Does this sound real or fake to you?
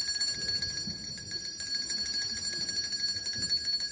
real